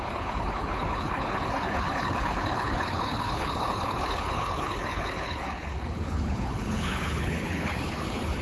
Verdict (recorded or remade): remade